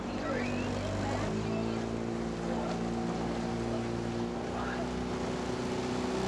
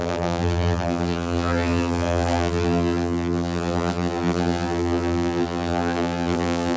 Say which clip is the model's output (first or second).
second